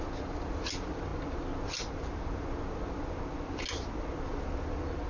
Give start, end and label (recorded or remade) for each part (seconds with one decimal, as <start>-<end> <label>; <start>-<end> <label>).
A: 0.0-5.1 recorded